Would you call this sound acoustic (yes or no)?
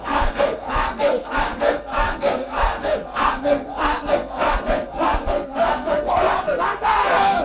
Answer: no